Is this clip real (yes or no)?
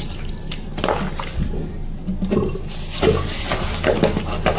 yes